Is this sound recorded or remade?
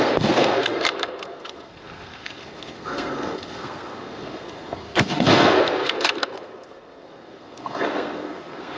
remade